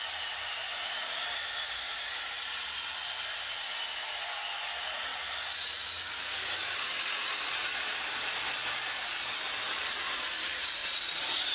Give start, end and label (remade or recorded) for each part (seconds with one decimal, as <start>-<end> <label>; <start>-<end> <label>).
0.0-10.8 recorded; 10.8-11.5 remade